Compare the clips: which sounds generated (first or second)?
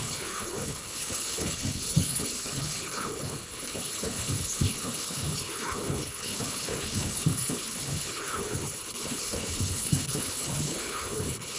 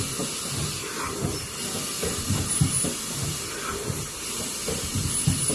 first